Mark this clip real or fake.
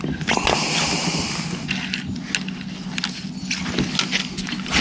real